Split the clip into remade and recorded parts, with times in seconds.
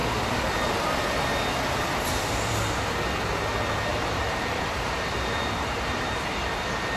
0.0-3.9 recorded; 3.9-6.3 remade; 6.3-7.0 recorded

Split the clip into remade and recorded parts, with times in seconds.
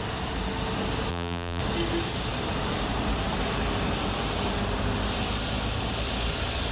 0.0-1.1 recorded; 1.1-1.6 remade; 1.6-6.7 recorded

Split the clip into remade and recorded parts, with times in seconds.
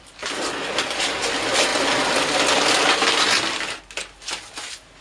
0.0-5.0 recorded